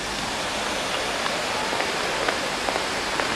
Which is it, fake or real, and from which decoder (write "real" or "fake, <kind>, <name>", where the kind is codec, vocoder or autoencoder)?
real